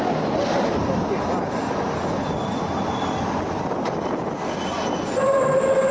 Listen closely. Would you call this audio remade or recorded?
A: recorded